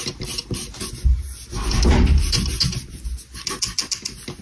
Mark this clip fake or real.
real